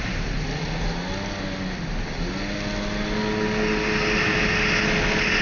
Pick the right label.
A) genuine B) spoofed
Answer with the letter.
A